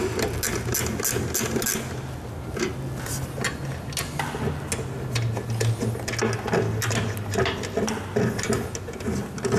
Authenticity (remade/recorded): recorded